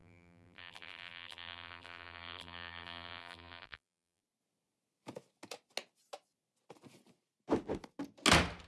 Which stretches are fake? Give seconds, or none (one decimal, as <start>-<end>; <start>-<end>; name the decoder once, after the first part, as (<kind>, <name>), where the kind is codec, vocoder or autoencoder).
0.0-4.2 (vocoder, BigVGAN v2)